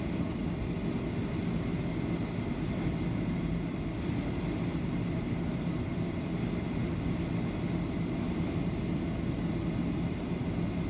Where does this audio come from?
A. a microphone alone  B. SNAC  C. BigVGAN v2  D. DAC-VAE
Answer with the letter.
A